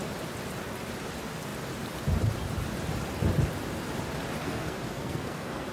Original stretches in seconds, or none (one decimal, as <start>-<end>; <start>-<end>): 0.0-4.4

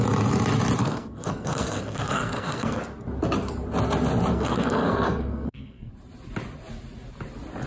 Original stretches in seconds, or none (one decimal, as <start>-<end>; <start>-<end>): 0.0-0.8; 2.8-4.3; 5.9-7.7